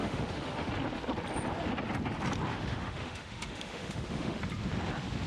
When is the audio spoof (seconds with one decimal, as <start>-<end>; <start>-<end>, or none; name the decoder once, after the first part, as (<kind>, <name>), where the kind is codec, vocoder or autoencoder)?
0.0-0.7 (autoencoder, DAC-VAE); 2.5-4.4